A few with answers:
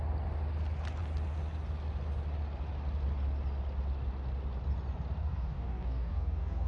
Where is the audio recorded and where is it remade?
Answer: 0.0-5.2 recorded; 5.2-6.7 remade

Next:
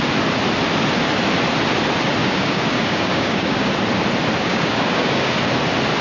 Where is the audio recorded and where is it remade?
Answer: 0.0-2.2 recorded; 2.2-3.7 remade; 3.7-4.4 recorded; 4.4-5.3 remade; 5.3-6.0 recorded

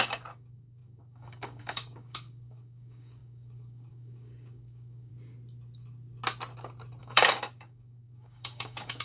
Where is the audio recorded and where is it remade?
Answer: 0.0-5.1 remade; 5.1-7.0 recorded; 7.0-9.0 remade

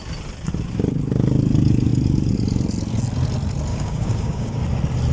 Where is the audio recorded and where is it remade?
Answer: 0.0-3.7 recorded; 3.7-4.6 remade; 4.6-5.1 recorded

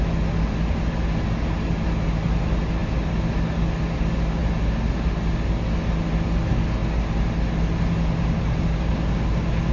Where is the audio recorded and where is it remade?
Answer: 0.0-9.7 recorded

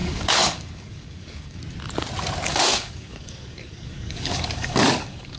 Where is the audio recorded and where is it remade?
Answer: 0.0-1.6 remade; 1.6-2.5 recorded; 2.5-5.4 remade

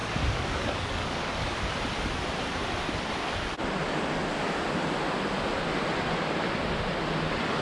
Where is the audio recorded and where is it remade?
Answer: 0.0-1.7 remade; 1.7-7.6 recorded

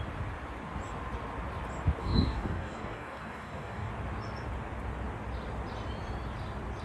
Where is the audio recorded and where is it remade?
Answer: 0.0-2.0 recorded; 2.0-3.9 remade; 3.9-6.8 recorded